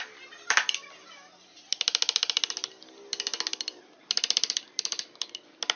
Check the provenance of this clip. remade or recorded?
recorded